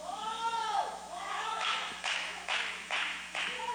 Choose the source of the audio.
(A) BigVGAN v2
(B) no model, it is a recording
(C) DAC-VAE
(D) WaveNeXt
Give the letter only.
C